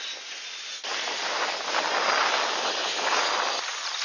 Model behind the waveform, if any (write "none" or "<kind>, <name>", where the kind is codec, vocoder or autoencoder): none